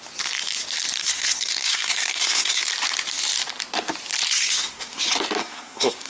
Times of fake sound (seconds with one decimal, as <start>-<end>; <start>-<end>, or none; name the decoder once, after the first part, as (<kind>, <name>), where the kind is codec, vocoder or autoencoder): 1.0-2.6 (codec, SNAC); 4.3-5.0; 5.4-6.1